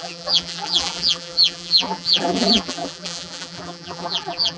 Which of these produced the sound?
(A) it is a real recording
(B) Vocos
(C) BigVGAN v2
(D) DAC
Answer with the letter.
C